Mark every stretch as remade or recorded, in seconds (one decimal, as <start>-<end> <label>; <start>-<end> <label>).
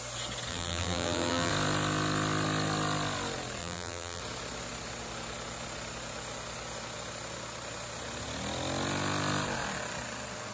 0.0-0.5 recorded; 0.5-1.5 remade; 1.5-3.6 recorded; 3.6-4.2 remade; 4.2-10.5 recorded